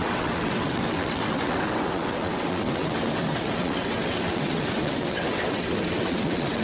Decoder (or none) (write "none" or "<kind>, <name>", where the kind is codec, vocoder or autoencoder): vocoder, WaveNeXt